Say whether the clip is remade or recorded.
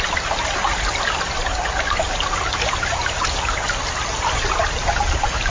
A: remade